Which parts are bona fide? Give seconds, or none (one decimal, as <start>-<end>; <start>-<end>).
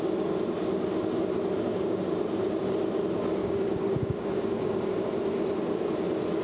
0.0-1.7; 2.2-3.4; 5.1-6.4